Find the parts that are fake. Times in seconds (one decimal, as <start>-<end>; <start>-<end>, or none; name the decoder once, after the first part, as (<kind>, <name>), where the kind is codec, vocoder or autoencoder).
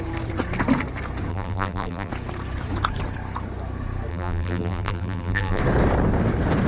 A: 1.3-2.1 (vocoder, BigVGAN v2); 4.1-5.6